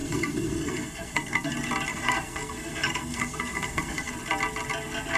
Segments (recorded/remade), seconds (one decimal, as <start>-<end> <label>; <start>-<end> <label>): 0.0-1.5 remade; 1.5-1.9 recorded; 1.9-4.1 remade; 4.1-5.2 recorded